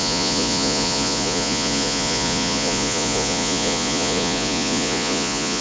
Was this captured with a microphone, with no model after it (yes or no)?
no